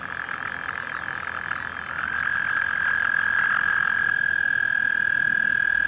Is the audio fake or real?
real